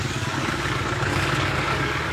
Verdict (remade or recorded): remade